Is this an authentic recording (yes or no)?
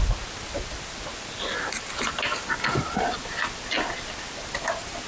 yes